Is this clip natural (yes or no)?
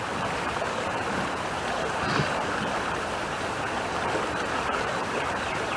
yes